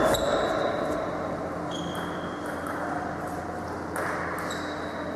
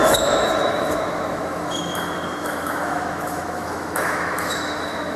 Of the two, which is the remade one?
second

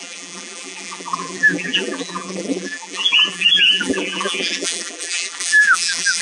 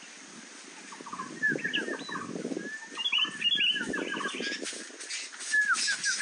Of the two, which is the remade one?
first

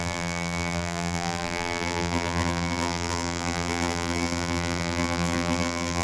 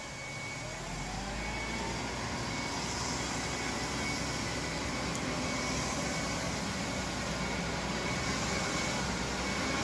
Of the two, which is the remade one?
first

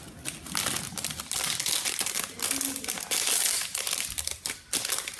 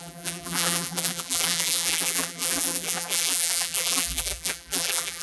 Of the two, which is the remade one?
second